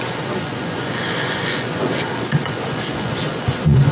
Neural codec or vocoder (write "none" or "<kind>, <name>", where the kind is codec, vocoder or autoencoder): vocoder, Vocos